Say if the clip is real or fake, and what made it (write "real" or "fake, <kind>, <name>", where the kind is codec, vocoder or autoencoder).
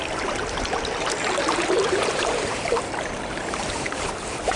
fake, vocoder, BigVGAN v2